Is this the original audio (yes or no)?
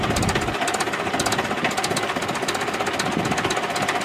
yes